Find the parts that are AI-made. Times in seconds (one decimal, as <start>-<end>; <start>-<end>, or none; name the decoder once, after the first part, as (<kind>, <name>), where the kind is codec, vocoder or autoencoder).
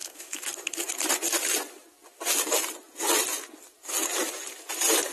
0.0-0.9 (codec, DAC)